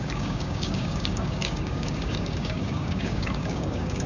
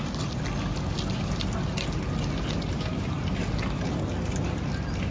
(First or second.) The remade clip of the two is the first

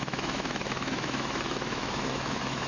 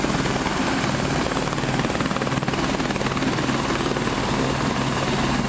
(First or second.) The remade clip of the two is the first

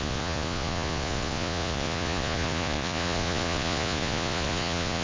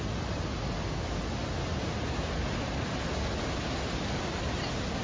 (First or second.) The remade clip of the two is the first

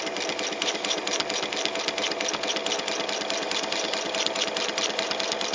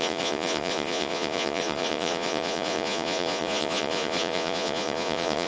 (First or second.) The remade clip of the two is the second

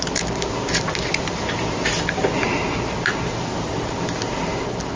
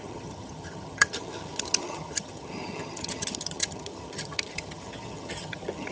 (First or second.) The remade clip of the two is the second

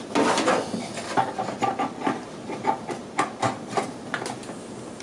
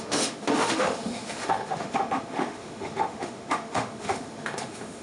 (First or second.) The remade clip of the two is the second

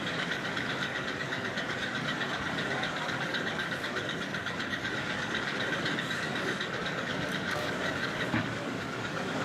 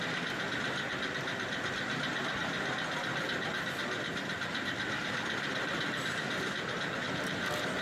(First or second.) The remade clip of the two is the first